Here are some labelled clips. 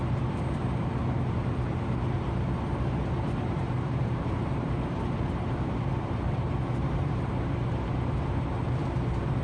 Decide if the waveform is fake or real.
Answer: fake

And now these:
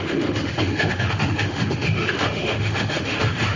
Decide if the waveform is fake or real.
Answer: fake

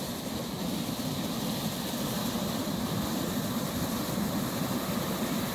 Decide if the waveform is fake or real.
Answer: real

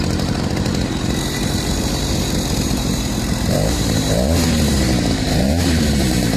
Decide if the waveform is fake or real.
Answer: fake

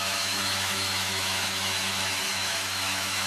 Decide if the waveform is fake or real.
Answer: fake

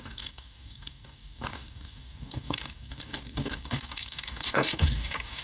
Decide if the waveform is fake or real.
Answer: fake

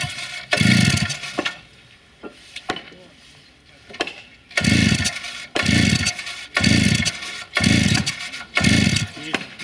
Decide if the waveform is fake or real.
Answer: real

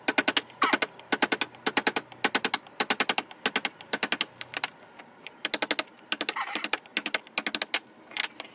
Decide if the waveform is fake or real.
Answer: real